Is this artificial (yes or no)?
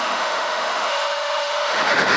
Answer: yes